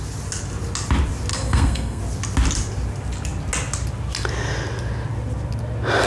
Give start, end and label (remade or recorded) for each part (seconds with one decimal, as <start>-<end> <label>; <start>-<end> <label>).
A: 0.0-1.3 recorded; 1.3-2.0 remade; 2.0-6.1 recorded